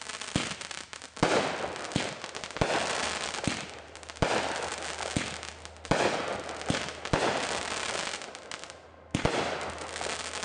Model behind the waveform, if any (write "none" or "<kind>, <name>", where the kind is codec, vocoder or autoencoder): none